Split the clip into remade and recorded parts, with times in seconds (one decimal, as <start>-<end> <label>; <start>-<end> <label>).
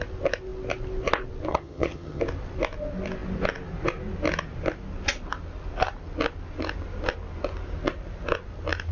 0.0-1.5 recorded; 1.5-2.2 remade; 2.2-8.9 recorded